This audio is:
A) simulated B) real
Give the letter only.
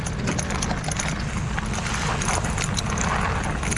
B